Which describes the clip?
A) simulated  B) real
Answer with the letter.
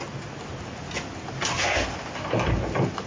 B